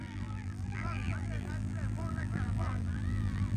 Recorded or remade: remade